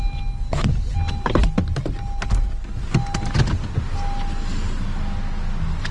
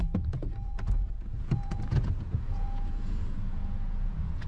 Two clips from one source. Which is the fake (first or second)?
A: second